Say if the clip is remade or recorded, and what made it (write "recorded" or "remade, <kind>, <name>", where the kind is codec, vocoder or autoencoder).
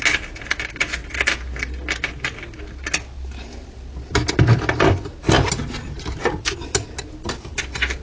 recorded